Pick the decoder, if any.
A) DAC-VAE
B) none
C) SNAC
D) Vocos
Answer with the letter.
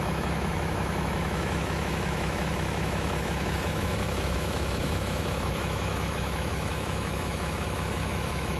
A